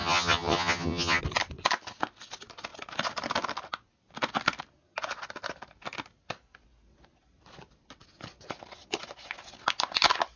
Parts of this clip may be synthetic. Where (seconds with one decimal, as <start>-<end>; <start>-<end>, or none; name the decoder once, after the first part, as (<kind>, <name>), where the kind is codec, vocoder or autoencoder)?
0.0-1.2 (vocoder, HiFi-GAN)